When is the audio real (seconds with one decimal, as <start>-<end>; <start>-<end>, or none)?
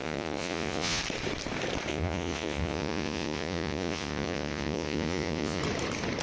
1.0-1.9; 5.6-6.2